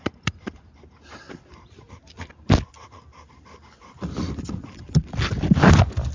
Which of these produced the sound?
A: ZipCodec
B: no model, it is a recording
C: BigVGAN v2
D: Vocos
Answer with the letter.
B